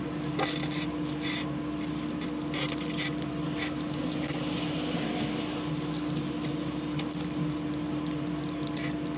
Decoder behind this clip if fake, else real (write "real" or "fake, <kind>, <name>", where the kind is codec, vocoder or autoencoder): real